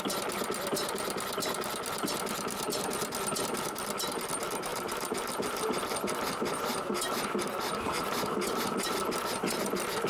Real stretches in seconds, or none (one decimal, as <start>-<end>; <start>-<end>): 0.0-4.7; 6.3-10.1